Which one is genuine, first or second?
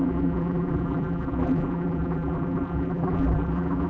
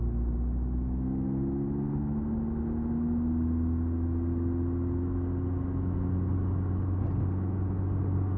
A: second